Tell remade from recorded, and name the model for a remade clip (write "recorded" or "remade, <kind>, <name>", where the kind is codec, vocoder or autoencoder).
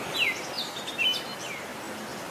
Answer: recorded